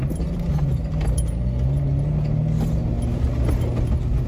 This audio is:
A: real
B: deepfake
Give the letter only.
A